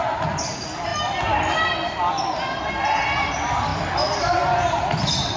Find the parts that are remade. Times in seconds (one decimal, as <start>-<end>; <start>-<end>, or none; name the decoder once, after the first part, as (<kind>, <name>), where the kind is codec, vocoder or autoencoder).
none